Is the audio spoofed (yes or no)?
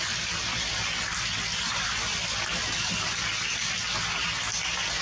no